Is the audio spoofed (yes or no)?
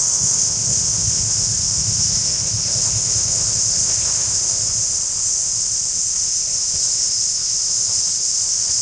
yes